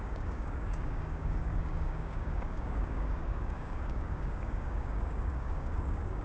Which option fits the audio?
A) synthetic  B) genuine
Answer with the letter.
A